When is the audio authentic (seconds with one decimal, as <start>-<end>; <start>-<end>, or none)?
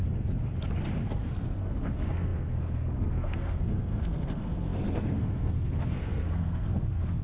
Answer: 0.0-1.1